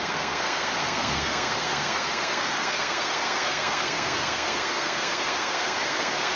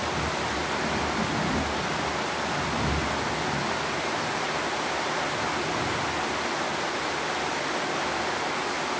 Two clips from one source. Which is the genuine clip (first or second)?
second